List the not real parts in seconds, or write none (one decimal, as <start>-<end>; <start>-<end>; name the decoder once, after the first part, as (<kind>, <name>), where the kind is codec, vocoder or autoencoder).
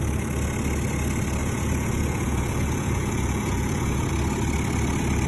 1.4-4.1 (vocoder, Vocos)